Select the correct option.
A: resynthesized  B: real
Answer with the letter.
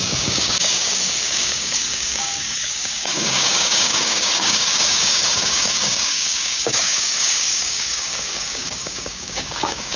A